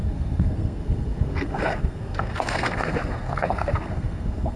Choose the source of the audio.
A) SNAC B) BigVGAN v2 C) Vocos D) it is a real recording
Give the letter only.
A